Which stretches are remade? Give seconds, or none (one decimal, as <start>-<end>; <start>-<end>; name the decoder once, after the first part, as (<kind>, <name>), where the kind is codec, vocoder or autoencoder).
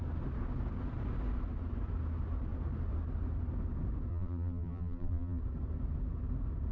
4.1-5.4 (vocoder, BigVGAN v2)